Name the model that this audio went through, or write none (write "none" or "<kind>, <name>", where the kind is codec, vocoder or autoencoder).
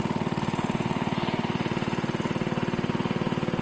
none